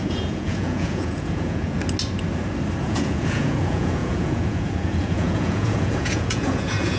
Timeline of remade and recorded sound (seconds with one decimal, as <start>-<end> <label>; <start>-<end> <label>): 0.0-1.8 remade; 1.8-2.8 recorded; 2.8-7.0 remade